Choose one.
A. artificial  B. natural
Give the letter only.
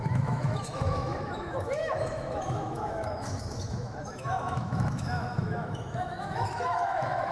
A